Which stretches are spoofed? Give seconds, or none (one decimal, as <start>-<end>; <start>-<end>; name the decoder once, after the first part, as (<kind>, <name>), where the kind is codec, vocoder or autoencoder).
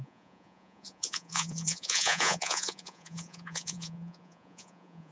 0.0-5.1 (vocoder, Vocos)